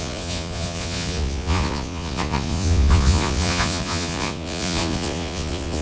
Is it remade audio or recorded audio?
remade